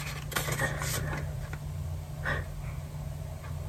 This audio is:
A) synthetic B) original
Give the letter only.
B